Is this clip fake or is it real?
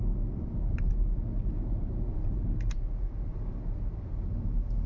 real